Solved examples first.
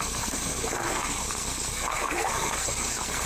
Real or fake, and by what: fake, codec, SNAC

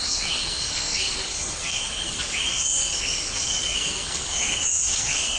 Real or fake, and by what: fake, codec, SNAC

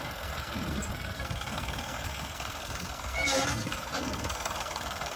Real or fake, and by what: fake, codec, SNAC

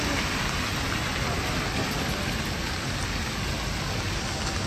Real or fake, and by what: real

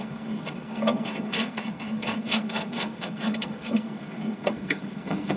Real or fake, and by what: fake, codec, SNAC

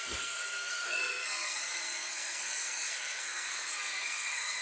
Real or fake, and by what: fake, codec, SNAC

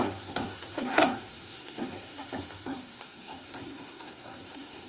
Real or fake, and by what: fake, codec, SNAC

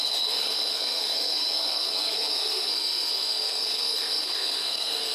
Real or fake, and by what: fake, codec, SNAC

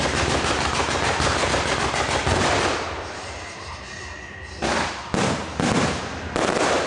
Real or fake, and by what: real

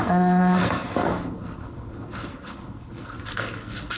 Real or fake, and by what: fake, codec, SNAC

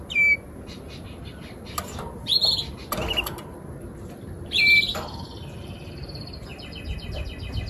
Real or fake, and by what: real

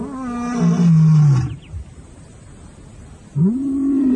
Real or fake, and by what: real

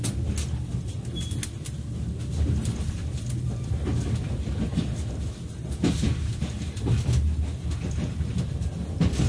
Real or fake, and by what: real